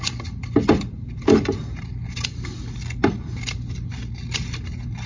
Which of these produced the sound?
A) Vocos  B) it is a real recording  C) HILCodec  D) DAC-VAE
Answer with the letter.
B